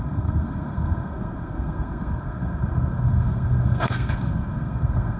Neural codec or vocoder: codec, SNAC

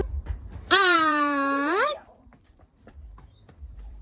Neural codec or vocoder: vocoder, BigVGAN v2